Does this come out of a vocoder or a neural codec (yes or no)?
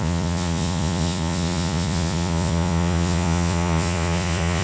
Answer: yes